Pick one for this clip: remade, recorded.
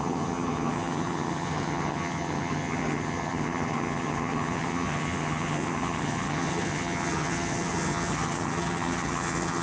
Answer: remade